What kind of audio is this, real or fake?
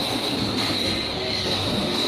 fake